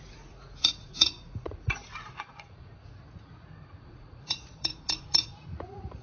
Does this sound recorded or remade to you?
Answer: remade